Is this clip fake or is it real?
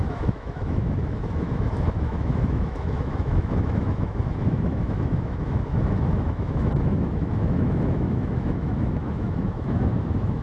fake